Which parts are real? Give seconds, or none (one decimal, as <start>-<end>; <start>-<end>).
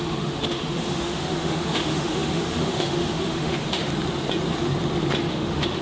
3.9-5.3